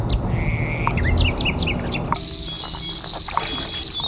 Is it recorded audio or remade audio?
recorded